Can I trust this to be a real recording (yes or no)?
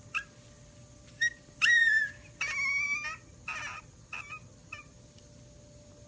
yes